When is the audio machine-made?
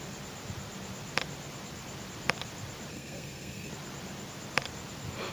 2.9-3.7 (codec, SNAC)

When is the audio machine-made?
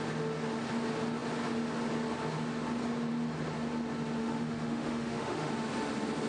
4.2-5.5 (autoencoder, DAC-VAE)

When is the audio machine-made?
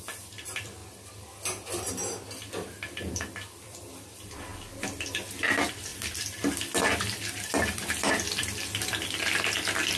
0.0-0.8 (vocoder, BigVGAN v2); 1.9-4.5; 5.4-10.0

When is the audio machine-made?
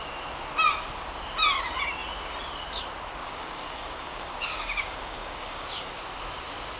3.2-5.9 (codec, DAC)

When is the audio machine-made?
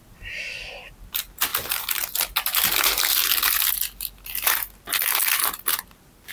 none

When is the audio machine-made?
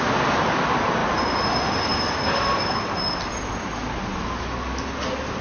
1.9-4.0 (vocoder, BigVGAN v2)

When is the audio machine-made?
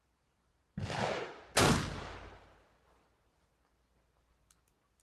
none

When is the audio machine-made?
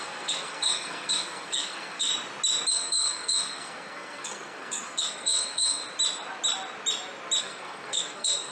0.0-2.1 (codec, SNAC); 2.7-5.8; 7.4-8.5